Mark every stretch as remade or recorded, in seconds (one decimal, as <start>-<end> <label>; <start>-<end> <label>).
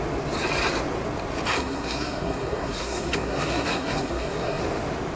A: 0.0-1.5 recorded; 1.5-4.6 remade; 4.6-5.2 recorded